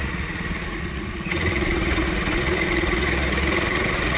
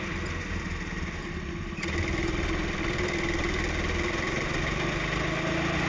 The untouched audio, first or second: second